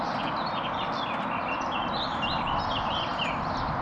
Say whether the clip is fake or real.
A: real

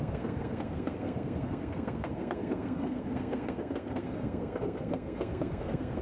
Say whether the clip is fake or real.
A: fake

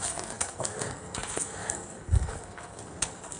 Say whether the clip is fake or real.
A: fake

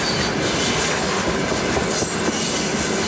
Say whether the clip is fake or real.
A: real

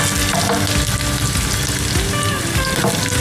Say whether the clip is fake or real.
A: real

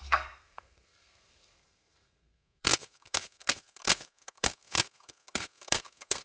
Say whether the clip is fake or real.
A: fake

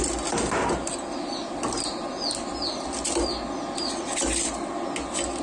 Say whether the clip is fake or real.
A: real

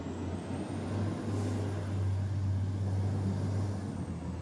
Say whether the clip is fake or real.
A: real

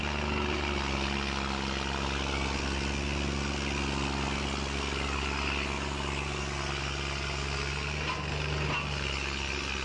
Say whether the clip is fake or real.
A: real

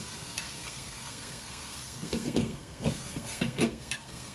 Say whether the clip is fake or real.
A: fake